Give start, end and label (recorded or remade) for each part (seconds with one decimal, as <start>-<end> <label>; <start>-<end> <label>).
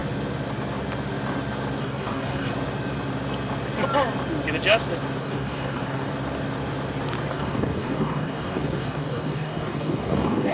0.0-1.8 recorded; 1.8-2.5 remade; 2.5-5.2 recorded; 5.2-6.1 remade; 6.1-7.3 recorded; 7.3-10.5 remade